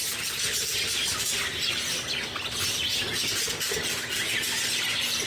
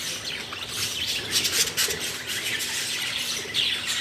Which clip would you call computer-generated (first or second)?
second